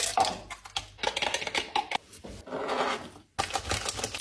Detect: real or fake real